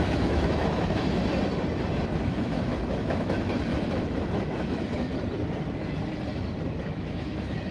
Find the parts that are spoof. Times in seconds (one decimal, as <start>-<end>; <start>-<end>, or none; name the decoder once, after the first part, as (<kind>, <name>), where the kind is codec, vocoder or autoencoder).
0.0-1.3 (autoencoder, DAC-VAE); 2.3-5.1; 6.8-7.7